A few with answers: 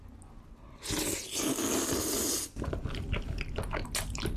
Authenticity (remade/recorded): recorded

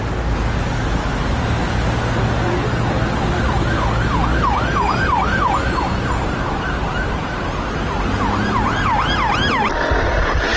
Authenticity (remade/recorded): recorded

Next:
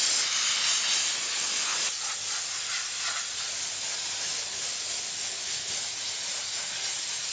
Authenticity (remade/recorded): recorded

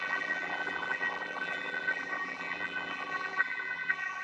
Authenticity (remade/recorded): remade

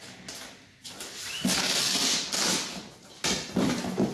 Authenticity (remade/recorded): recorded